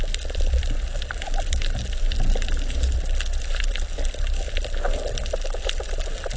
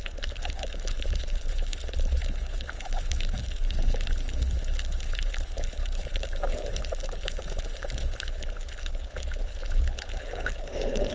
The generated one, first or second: second